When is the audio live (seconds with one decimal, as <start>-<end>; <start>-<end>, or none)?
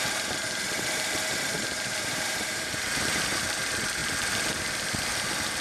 4.0-5.6